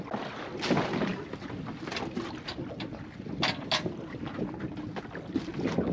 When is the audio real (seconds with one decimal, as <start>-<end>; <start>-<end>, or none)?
0.0-5.9